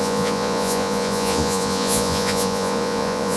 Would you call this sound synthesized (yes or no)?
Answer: yes